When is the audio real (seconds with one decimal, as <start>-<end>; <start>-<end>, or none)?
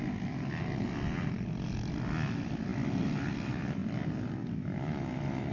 0.0-5.5